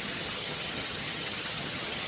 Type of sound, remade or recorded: remade